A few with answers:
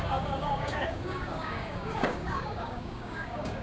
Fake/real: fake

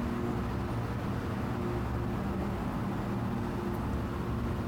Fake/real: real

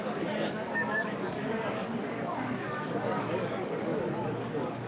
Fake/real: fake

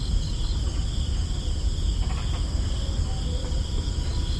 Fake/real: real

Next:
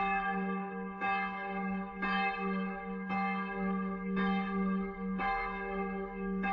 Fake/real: fake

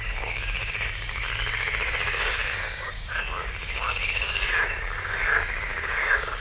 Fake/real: fake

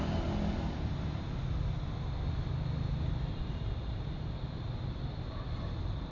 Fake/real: real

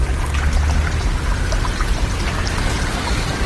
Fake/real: real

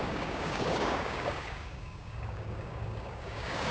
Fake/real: fake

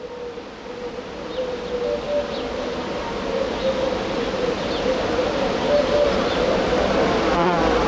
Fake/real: real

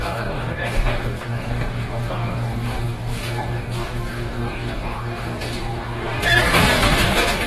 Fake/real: fake